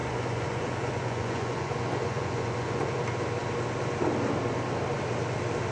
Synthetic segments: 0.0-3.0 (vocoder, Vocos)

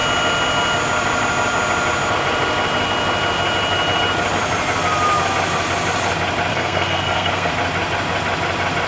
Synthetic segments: 6.5-7.5 (codec, SNAC)

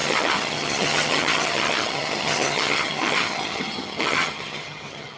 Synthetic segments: 0.0-5.2 (vocoder, HiFi-GAN)

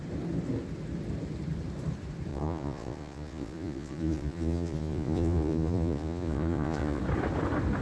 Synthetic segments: 2.3-7.0 (vocoder, Vocos)

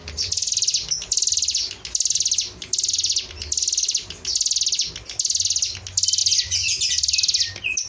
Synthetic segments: none

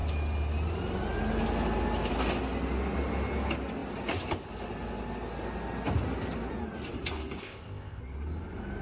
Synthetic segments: 7.4-8.0 (codec, ZipCodec)